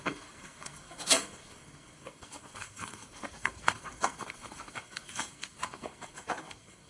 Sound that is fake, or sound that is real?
fake